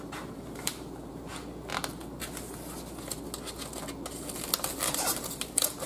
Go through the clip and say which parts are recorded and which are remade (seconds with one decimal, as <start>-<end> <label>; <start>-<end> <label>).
0.0-1.3 remade; 1.3-4.8 recorded; 4.8-5.9 remade